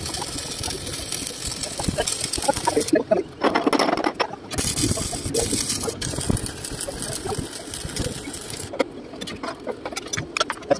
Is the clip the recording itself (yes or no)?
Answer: yes